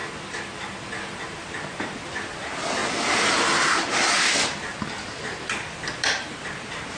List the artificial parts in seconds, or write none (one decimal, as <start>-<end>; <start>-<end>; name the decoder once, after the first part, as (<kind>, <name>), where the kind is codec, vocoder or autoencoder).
0.9-2.8 (vocoder, BigVGAN v2); 5.7-7.0